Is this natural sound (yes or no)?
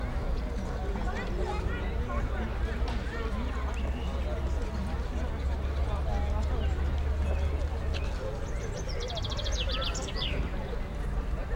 yes